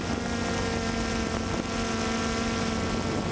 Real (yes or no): yes